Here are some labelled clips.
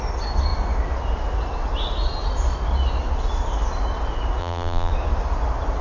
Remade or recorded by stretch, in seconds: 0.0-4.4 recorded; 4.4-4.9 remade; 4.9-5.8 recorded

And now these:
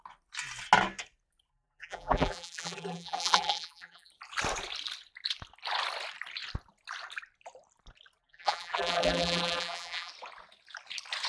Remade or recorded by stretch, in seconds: 0.0-1.5 recorded; 1.5-4.1 remade; 4.1-8.2 recorded; 8.2-10.1 remade; 10.1-11.3 recorded

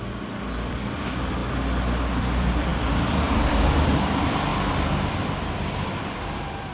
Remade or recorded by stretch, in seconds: 0.0-1.4 remade; 1.4-2.2 recorded; 2.2-6.7 remade

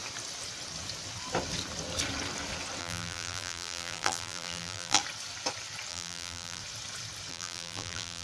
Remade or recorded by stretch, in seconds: 0.0-2.8 recorded; 2.8-5.0 remade; 5.0-5.9 recorded; 5.9-6.6 remade; 6.6-7.3 recorded; 7.3-8.2 remade

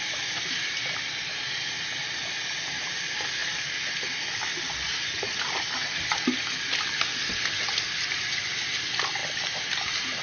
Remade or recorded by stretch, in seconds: 0.0-10.2 recorded